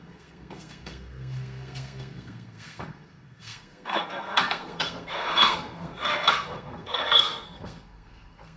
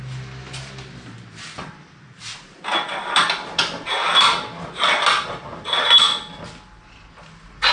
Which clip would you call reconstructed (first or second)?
first